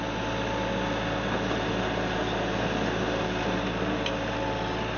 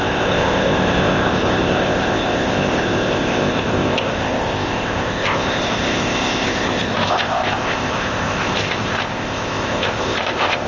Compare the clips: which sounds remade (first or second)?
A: second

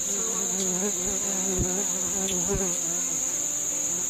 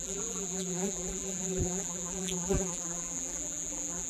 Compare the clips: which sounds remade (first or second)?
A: second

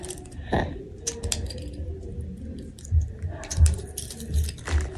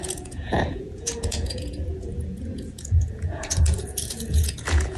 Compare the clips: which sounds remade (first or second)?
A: second